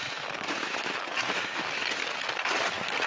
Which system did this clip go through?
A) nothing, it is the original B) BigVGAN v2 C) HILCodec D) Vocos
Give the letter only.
A